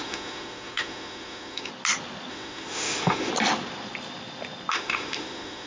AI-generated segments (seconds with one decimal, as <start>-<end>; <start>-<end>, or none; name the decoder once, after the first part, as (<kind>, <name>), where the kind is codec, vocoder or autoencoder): 0.0-1.7 (autoencoder, DAC-VAE); 2.3-3.3; 4.7-5.7